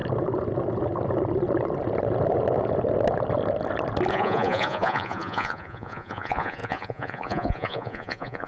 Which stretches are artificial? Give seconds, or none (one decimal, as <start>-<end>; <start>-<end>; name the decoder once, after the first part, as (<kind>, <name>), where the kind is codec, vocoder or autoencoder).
4.1-8.5 (vocoder, Vocos)